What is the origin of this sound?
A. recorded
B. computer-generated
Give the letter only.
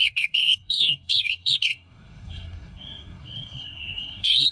B